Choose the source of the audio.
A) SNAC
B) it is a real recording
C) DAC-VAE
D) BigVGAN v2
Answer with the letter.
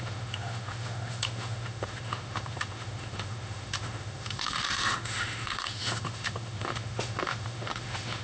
C